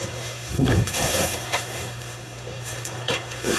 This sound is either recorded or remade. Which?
remade